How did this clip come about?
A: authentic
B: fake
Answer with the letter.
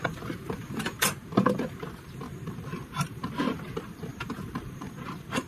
B